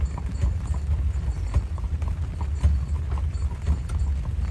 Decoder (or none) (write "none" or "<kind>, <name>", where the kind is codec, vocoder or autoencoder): none